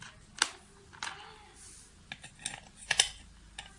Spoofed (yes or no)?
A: no